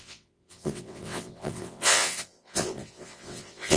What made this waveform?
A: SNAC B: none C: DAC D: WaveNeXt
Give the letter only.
D